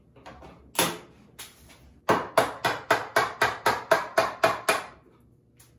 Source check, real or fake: real